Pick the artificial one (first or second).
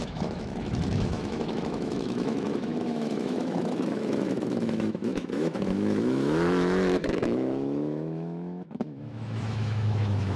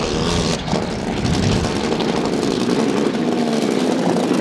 first